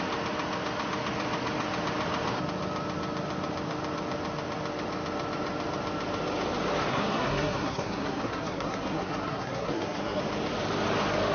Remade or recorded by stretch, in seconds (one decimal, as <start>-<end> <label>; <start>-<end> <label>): 0.0-6.9 recorded; 6.9-10.2 remade; 10.2-11.3 recorded